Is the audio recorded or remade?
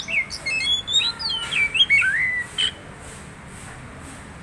recorded